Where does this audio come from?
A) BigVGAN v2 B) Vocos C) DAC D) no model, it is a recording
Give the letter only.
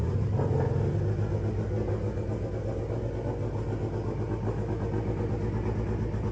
D